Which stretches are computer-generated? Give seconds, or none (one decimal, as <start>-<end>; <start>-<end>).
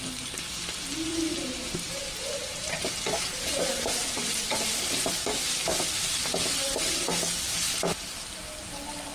1.1-5.8